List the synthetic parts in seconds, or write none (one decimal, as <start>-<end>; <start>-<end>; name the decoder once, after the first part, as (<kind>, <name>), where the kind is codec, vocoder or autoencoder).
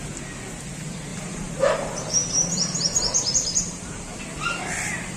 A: 1.1-4.2 (vocoder, BigVGAN v2)